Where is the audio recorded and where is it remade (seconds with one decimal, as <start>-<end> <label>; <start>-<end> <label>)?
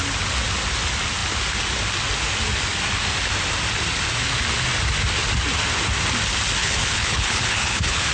0.0-6.6 recorded; 6.6-8.1 remade